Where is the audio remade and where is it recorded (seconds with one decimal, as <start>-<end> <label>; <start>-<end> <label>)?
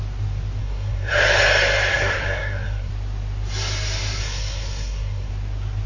0.0-0.6 recorded; 0.6-1.1 remade; 1.1-1.9 recorded; 1.9-2.9 remade; 2.9-4.2 recorded; 4.2-5.3 remade; 5.3-5.9 recorded